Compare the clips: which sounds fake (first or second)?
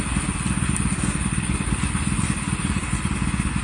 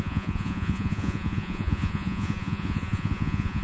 second